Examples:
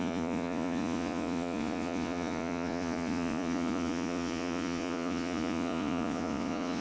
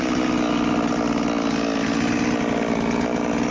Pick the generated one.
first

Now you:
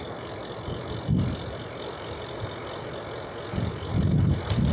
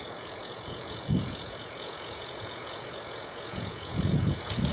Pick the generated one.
second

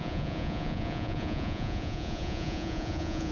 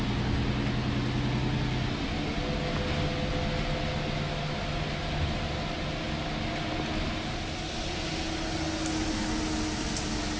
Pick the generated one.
first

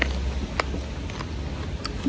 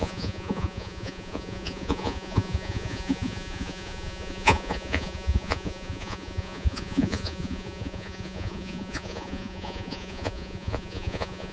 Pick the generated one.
second